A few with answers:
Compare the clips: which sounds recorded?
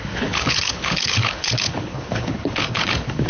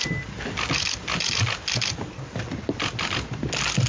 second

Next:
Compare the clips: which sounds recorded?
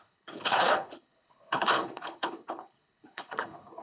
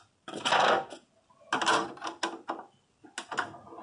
second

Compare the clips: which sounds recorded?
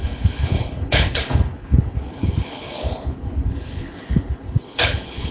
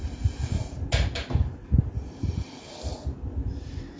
second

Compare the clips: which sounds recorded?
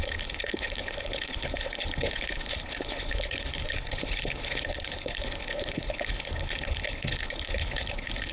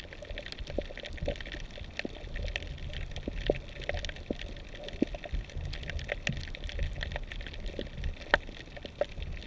second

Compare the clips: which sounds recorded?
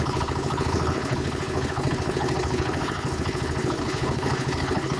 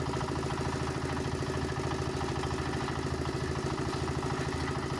second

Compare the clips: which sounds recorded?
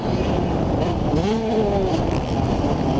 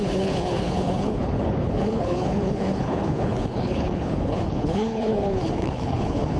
first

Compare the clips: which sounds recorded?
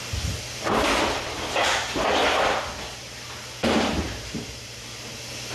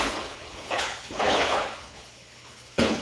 first